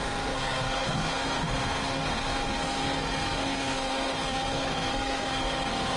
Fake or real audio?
fake